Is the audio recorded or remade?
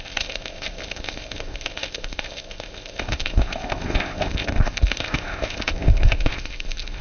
remade